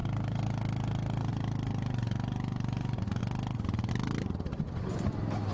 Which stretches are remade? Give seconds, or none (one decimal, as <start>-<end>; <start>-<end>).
none